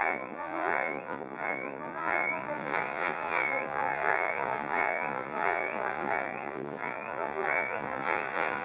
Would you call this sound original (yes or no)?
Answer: no